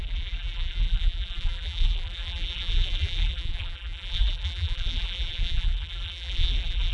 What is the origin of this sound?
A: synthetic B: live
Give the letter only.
A